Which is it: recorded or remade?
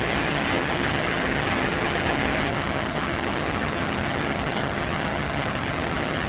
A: remade